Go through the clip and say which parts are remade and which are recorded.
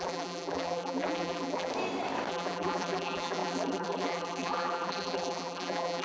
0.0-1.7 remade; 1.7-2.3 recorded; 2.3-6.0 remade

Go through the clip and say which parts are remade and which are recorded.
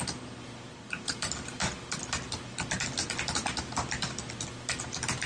0.0-5.3 recorded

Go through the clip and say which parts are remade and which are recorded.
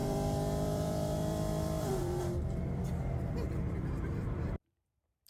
0.0-5.3 remade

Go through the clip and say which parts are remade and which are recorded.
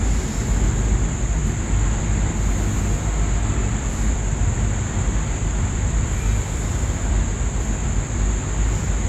0.0-3.6 recorded; 3.6-8.2 remade; 8.2-9.1 recorded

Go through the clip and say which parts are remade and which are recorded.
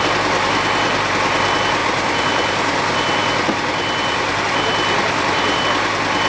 0.0-1.8 recorded; 1.8-5.6 remade; 5.6-6.3 recorded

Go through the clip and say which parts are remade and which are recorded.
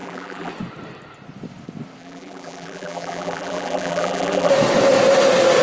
0.0-0.5 remade; 0.5-2.0 recorded; 2.0-4.5 remade; 4.5-5.6 recorded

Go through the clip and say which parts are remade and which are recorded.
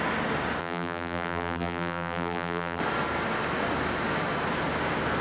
0.0-0.6 recorded; 0.6-2.8 remade; 2.8-5.2 recorded